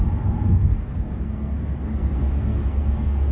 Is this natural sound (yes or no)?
no